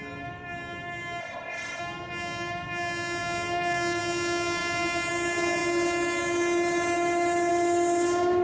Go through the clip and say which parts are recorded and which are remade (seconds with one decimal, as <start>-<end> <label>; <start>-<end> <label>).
0.0-1.2 recorded; 1.2-1.8 remade; 1.8-8.4 recorded